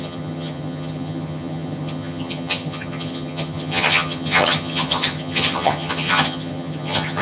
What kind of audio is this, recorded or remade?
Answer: remade